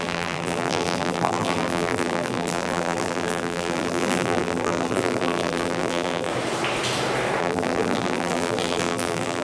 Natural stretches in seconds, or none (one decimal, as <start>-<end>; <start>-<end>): 6.3-7.4